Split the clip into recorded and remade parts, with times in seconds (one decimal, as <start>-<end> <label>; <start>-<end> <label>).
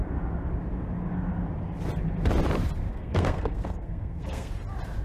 0.0-2.9 recorded; 2.9-4.5 remade; 4.5-5.0 recorded